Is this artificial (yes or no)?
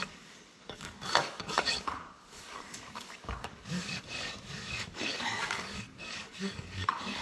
yes